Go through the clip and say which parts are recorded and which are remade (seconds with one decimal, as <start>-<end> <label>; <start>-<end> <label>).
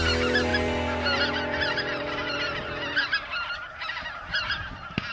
0.0-5.1 recorded